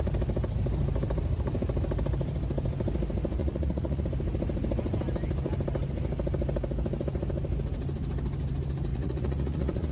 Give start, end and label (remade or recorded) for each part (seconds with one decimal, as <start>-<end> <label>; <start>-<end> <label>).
0.0-3.4 recorded; 3.4-4.0 remade; 4.0-8.9 recorded; 8.9-9.9 remade